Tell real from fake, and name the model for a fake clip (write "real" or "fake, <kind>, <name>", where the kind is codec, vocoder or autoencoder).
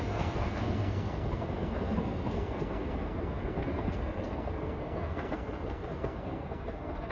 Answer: fake, codec, SNAC